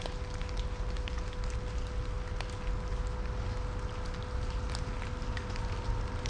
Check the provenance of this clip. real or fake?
real